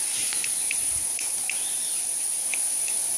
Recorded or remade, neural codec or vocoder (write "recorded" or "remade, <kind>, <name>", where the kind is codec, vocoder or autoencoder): recorded